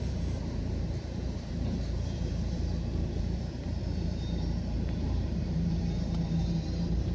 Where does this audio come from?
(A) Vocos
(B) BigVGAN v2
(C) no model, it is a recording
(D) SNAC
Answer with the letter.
B